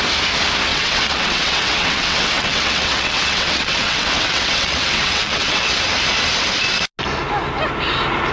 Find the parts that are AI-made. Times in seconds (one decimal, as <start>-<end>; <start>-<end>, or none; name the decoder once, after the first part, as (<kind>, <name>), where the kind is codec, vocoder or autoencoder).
0.7-5.7 (vocoder, WaveNeXt)